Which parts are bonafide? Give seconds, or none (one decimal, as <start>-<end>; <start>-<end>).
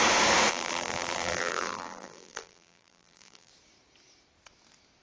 0.0-0.5; 3.5-5.0